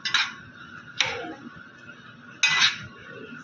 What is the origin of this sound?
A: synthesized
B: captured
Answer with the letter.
B